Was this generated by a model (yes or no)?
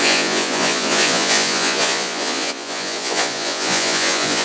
yes